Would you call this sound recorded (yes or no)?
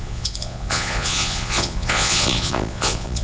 no